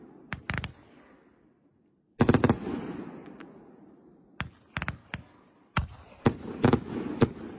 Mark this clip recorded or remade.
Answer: recorded